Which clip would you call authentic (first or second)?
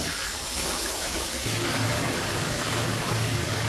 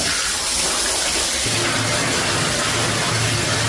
second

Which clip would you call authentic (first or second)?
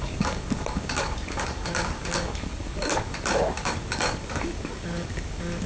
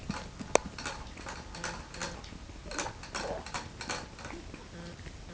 second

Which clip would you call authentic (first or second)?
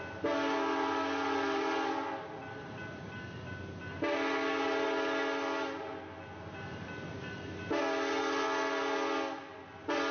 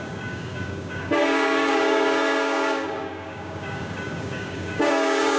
first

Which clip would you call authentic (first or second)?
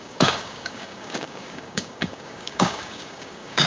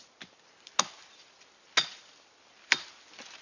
second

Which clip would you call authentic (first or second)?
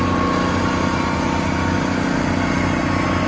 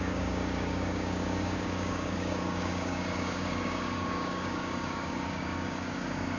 first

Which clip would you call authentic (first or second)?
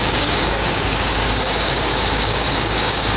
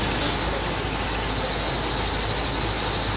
second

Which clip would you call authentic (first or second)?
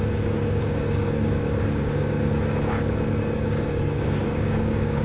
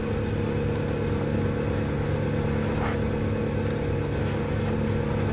second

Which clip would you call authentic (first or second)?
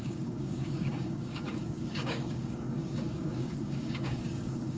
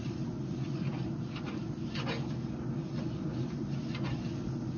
second